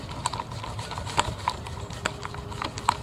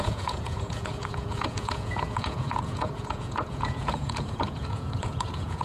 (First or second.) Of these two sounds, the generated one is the second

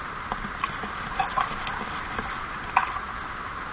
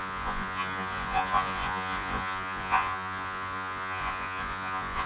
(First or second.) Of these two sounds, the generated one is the second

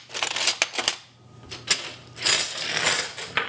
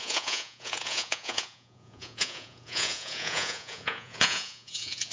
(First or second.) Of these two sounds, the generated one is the second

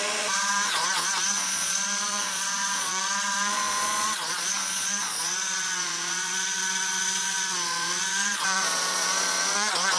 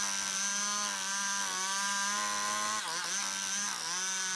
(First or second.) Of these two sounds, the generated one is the first